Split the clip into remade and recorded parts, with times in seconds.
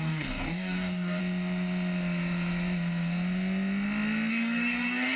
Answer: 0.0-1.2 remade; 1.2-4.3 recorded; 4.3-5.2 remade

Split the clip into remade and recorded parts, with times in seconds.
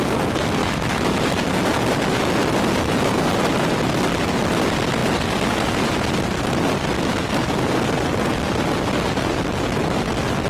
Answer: 0.0-0.6 recorded; 0.6-1.1 remade; 1.1-10.5 recorded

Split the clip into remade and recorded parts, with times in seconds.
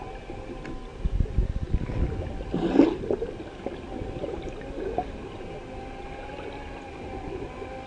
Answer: 0.0-7.9 recorded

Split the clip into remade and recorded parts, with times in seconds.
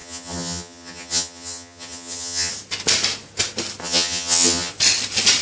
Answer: 0.0-2.5 remade; 2.5-3.8 recorded; 3.8-4.7 remade; 4.7-5.4 recorded